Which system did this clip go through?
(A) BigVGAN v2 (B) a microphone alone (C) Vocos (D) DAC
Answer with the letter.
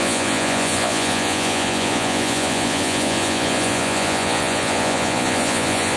C